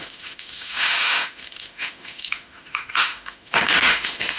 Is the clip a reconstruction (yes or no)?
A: yes